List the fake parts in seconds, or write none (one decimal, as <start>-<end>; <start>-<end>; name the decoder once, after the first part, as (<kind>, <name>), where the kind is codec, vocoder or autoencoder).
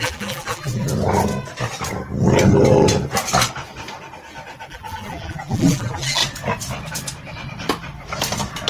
0.0-0.9 (vocoder, BigVGAN v2); 4.7-6.2